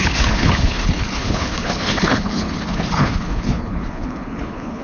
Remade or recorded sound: remade